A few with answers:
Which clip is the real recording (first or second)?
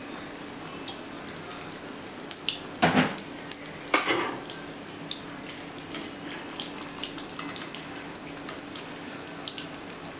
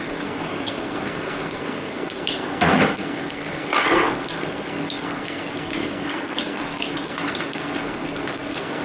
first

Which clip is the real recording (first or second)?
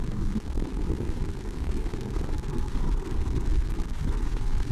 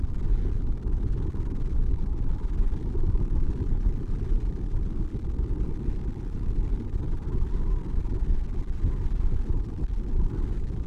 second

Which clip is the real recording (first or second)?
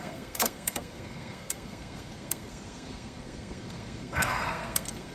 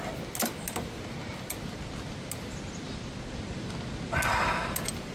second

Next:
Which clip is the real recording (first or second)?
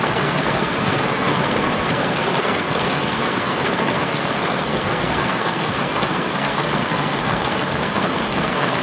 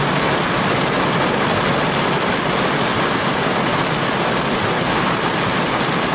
second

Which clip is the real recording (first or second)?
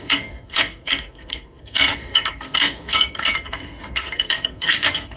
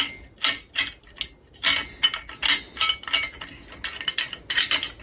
second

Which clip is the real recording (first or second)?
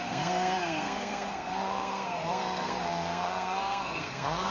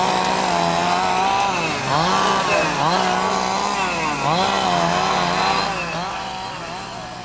second